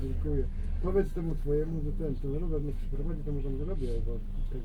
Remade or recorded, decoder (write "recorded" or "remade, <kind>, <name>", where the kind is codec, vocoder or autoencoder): recorded